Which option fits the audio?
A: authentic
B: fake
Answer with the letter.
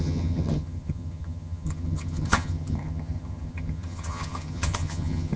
B